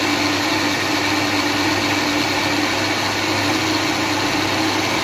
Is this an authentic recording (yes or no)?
yes